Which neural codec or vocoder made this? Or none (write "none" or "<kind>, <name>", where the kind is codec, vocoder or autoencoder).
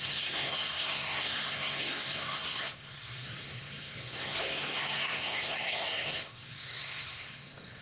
codec, SNAC